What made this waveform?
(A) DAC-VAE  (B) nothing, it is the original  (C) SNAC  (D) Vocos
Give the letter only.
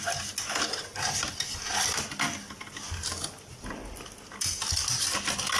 B